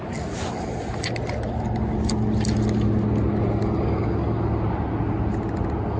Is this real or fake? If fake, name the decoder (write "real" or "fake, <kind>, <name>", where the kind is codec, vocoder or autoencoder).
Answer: real